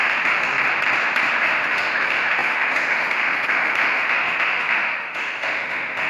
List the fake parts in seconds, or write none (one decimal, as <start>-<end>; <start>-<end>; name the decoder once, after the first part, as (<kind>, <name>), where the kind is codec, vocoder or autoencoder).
0.0-0.5 (autoencoder, DAC-VAE); 1.4-6.1